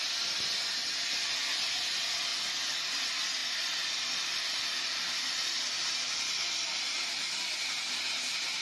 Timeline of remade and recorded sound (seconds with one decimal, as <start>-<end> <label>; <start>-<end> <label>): 0.0-2.3 recorded; 2.3-2.9 remade; 2.9-3.4 recorded; 3.4-6.8 remade; 6.8-8.6 recorded